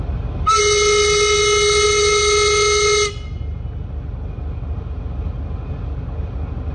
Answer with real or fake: real